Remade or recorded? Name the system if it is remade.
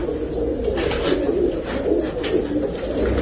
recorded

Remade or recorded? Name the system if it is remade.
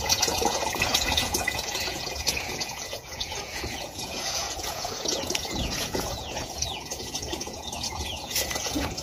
remade, vocoder, Vocos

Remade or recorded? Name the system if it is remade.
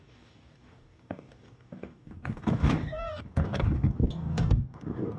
remade, codec, DAC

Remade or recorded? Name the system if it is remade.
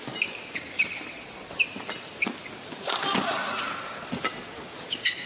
recorded